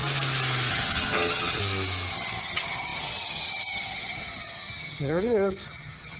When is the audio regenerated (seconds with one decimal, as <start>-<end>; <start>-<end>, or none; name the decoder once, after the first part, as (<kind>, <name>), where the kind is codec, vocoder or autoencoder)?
0.7-1.6 (vocoder, HiFi-GAN); 2.1-6.2